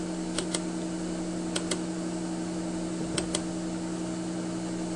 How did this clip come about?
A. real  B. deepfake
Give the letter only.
A